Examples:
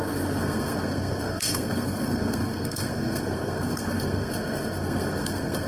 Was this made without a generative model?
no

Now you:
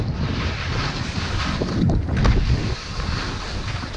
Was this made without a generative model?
yes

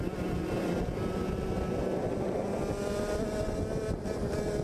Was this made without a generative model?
yes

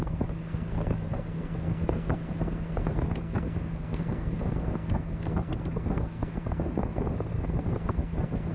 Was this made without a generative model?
no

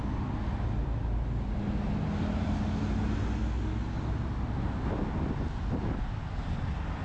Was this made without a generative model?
yes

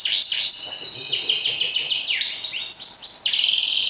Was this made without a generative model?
yes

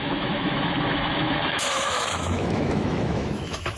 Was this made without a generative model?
no